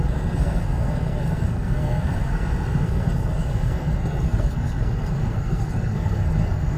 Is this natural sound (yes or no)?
no